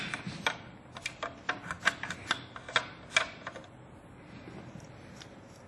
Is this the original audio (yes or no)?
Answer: yes